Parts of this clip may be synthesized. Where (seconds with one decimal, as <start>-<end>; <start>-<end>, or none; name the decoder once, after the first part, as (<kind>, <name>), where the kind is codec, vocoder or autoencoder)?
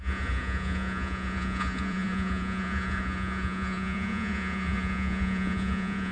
0.0-6.1 (vocoder, Vocos)